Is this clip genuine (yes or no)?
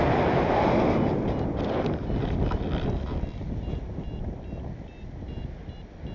yes